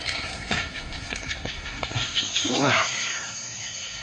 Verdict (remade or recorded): remade